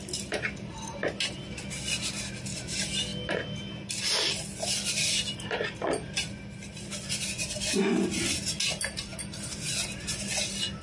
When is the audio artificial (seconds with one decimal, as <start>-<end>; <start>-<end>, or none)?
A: none